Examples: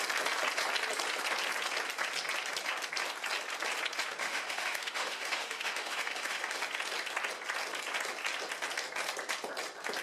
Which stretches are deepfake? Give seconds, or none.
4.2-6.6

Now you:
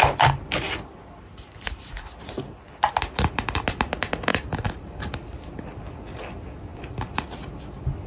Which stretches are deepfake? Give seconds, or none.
4.3-5.4

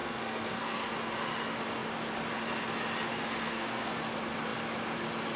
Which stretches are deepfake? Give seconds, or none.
0.0-1.0; 3.1-3.9

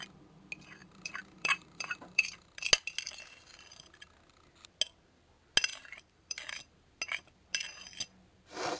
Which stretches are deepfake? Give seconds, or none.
0.8-2.7; 5.7-6.4

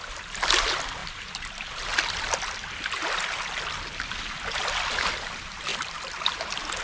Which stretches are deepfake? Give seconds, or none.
none

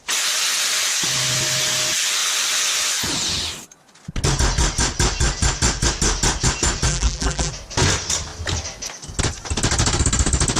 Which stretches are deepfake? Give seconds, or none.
6.9-7.5